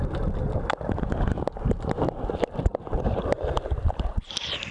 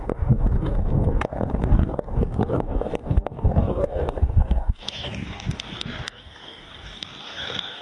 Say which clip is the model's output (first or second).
second